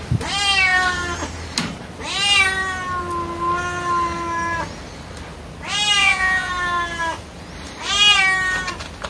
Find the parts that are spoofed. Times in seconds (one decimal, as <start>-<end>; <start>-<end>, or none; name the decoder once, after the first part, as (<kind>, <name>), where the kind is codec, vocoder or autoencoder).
6.0-6.5 (vocoder, Vocos)